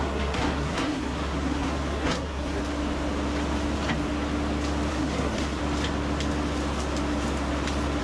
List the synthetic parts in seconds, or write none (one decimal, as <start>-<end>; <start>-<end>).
0.0-2.6; 4.9-5.6